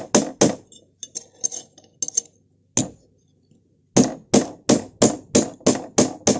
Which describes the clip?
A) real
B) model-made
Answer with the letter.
A